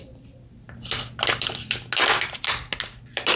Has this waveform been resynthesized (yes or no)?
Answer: no